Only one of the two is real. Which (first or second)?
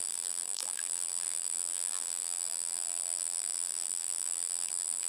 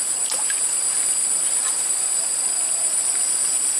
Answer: second